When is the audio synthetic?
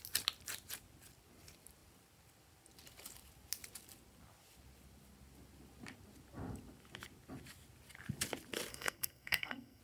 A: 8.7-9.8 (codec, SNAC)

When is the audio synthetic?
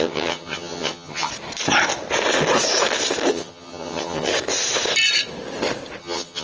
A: 0.0-1.3 (vocoder, HiFi-GAN); 3.3-4.3; 6.0-6.4